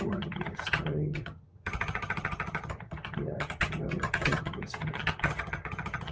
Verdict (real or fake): fake